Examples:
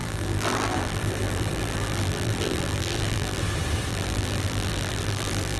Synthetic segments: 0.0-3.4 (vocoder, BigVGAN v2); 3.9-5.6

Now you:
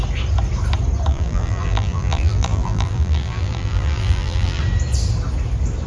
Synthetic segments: 1.1-4.6 (vocoder, BigVGAN v2)